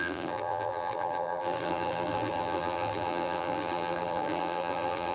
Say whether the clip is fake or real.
fake